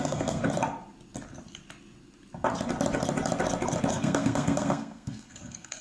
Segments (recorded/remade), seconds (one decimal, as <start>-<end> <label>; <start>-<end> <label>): 0.0-0.4 remade; 0.4-3.9 recorded; 3.9-5.8 remade